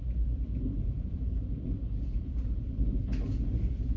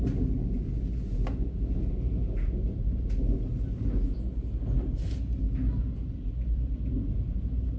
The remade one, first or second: first